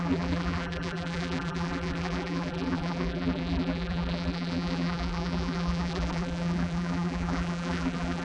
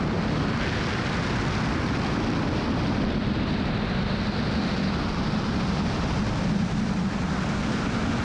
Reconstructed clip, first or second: first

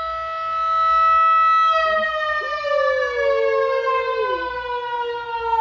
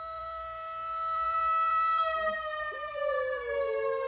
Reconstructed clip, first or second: second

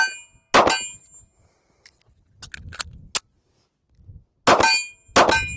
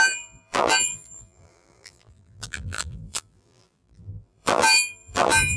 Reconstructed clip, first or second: second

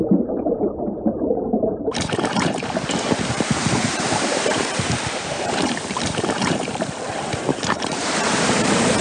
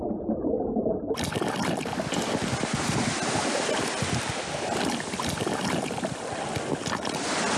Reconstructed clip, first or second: first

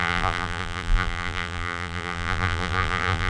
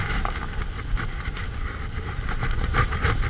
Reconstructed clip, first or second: first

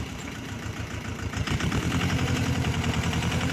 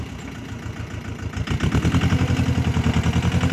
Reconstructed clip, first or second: first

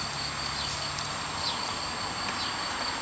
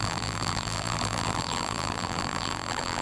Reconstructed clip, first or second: second